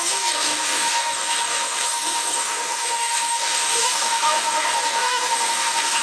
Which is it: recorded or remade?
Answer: remade